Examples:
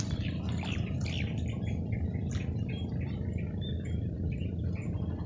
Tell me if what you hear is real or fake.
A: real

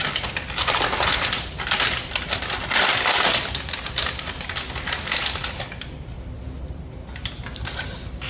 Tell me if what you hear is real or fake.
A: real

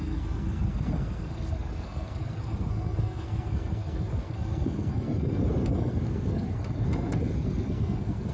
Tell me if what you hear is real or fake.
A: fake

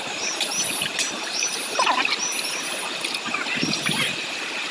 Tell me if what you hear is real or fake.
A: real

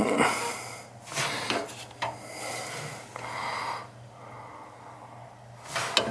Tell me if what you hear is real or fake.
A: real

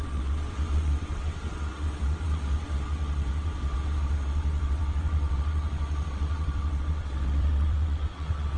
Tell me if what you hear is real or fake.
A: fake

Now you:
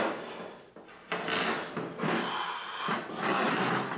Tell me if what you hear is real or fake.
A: real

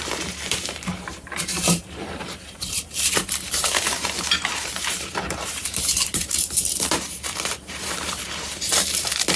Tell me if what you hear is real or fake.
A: fake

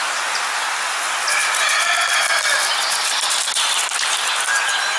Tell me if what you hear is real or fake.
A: real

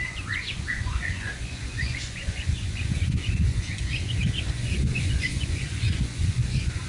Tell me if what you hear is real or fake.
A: fake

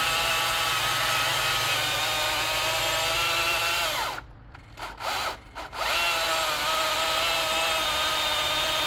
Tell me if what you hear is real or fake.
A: real